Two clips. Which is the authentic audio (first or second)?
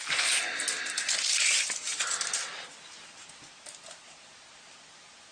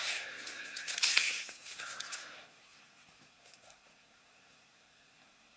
first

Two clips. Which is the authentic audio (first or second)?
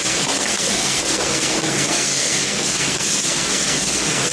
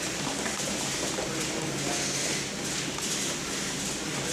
second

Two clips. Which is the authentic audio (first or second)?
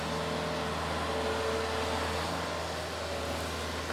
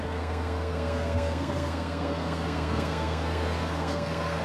first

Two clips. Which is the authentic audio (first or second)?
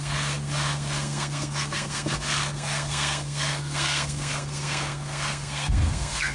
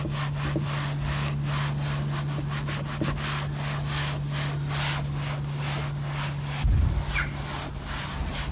second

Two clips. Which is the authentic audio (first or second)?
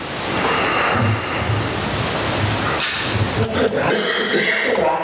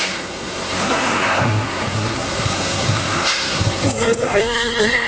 first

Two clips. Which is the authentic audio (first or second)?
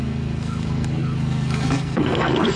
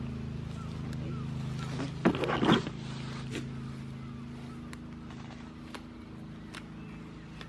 second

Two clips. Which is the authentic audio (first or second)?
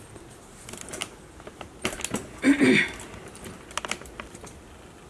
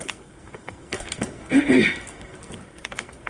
first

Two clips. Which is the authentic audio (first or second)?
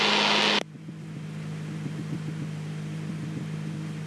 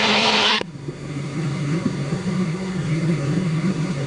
first